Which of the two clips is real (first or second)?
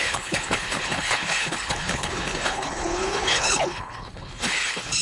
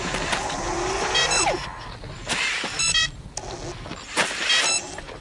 second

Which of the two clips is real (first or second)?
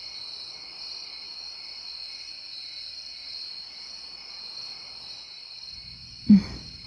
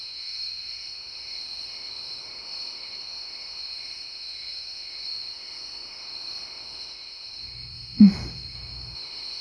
first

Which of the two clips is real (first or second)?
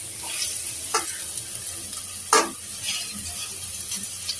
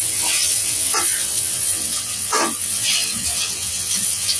first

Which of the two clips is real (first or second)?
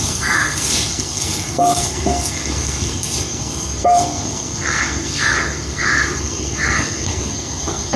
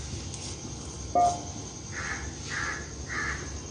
second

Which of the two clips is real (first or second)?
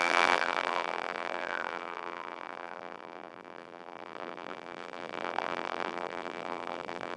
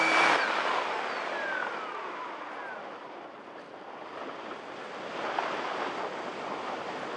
second